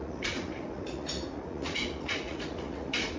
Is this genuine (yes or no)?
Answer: no